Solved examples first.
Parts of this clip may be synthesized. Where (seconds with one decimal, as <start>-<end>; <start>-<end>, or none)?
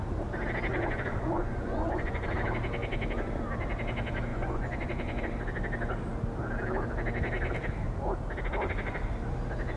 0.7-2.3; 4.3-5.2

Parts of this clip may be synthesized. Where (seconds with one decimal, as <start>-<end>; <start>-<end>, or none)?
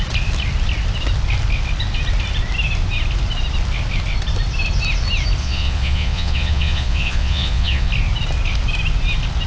5.4-7.9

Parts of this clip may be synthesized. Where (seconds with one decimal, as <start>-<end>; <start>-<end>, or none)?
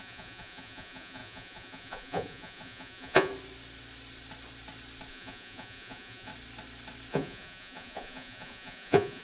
0.0-3.3; 5.1-6.3; 7.1-9.2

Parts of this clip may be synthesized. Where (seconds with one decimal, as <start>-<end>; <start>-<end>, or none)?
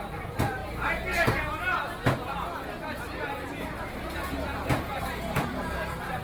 0.0-0.6; 4.3-6.2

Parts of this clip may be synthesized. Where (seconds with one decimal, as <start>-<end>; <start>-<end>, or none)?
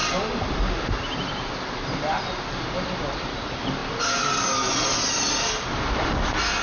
none